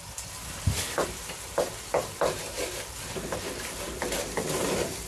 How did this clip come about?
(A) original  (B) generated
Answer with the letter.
A